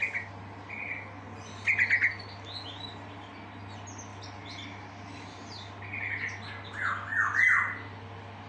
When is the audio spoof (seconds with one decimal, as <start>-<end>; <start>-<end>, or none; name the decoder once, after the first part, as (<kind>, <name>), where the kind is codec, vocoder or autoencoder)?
none